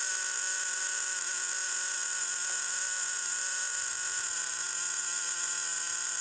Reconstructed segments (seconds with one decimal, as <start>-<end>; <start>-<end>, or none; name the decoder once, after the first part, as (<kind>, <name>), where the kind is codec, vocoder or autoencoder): none

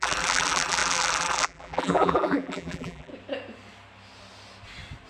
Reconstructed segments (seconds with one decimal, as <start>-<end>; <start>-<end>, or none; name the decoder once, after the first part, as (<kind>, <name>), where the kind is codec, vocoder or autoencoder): 0.0-3.1 (vocoder, BigVGAN v2)

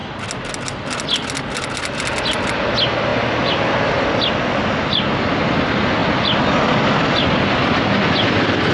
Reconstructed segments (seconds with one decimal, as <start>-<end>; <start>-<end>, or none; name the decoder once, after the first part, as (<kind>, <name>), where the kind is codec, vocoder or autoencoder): none